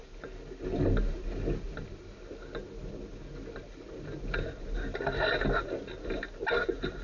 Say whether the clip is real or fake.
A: real